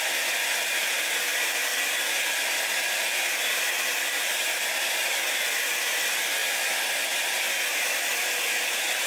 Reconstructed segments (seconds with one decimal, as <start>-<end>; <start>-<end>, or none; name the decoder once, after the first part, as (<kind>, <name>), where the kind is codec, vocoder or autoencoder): 0.0-1.7 (vocoder, BigVGAN v2); 2.4-9.1